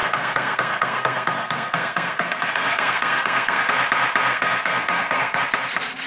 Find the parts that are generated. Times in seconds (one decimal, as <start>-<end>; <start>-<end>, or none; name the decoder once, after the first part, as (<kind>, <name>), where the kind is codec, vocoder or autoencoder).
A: 0.0-3.7 (codec, SNAC); 4.3-5.4